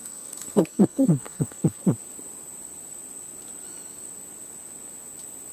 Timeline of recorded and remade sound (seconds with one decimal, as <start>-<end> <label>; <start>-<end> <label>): 0.0-1.8 remade; 1.8-5.5 recorded